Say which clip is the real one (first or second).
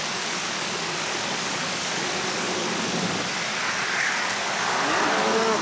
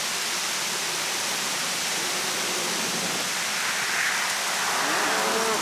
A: second